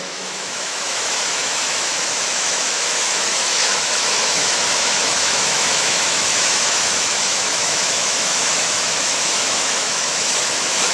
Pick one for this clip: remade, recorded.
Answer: remade